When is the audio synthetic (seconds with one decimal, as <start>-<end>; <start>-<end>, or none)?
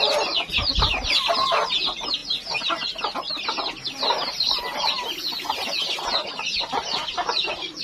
none